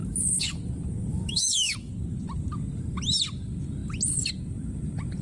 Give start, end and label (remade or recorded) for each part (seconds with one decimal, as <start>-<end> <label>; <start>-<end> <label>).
0.0-0.6 remade; 0.6-1.1 recorded; 1.1-1.9 remade; 1.9-5.2 recorded